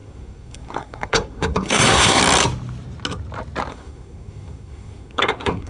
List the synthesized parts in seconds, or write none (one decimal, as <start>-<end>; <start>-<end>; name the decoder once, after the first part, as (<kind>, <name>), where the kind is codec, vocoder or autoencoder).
0.0-2.2 (codec, SNAC); 3.7-5.7